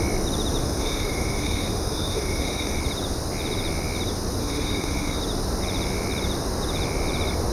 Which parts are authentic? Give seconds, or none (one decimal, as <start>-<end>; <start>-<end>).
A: 0.0-0.6; 2.8-4.4; 5.2-7.5